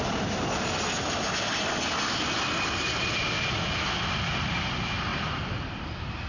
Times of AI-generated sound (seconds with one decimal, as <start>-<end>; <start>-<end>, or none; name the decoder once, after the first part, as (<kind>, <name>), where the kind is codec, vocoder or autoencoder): none